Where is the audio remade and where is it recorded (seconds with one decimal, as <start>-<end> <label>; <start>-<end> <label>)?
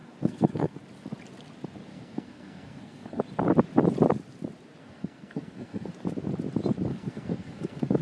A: 0.0-0.8 remade; 0.8-1.9 recorded; 1.9-3.2 remade; 3.2-4.8 recorded; 4.8-5.9 remade; 5.9-6.9 recorded; 6.9-8.0 remade